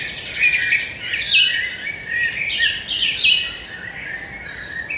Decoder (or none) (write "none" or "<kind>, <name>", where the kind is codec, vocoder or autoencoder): none